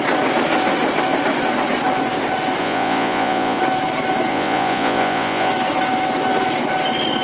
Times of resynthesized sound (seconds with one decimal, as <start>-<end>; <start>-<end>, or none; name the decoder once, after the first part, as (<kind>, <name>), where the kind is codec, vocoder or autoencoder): 2.6-3.6 (vocoder, Vocos); 4.3-5.5